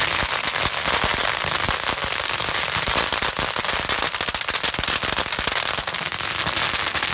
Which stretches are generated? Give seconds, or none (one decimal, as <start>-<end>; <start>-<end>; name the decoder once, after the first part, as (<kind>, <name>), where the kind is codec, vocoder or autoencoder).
2.0-6.3 (vocoder, BigVGAN v2)